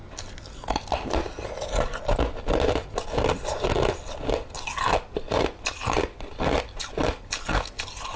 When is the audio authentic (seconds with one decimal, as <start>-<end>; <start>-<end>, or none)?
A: 0.0-8.2